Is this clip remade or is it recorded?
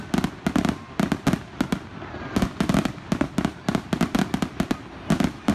recorded